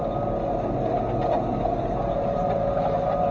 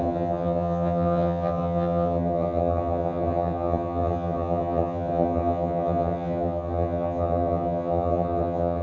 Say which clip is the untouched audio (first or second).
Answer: first